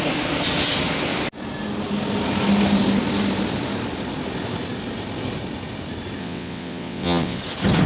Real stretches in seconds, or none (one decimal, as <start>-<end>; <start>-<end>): 0.0-6.2; 7.4-7.9